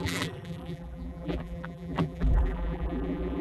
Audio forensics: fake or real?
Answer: fake